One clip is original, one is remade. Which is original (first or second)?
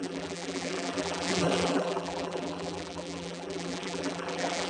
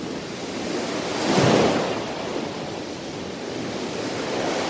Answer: second